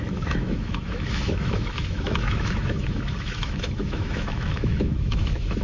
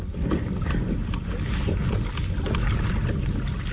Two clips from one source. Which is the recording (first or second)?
second